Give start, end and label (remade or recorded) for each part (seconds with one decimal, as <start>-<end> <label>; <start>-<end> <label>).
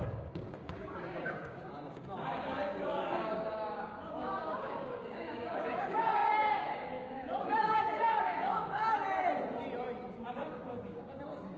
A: 0.0-8.8 remade; 8.8-10.1 recorded; 10.1-11.6 remade